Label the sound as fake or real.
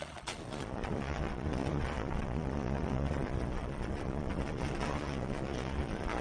fake